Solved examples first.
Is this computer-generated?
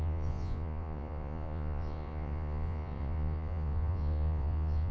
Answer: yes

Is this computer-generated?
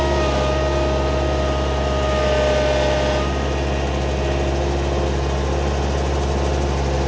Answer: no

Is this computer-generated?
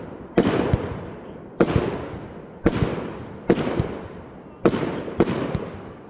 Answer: no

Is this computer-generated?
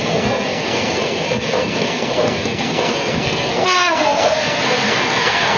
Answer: yes